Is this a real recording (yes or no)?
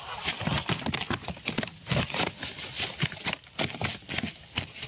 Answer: yes